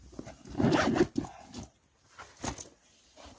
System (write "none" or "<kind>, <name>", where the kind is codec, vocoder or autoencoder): none